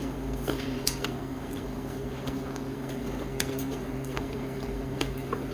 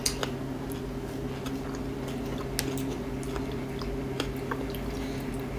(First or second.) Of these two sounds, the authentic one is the second